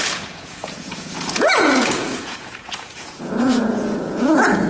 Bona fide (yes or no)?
no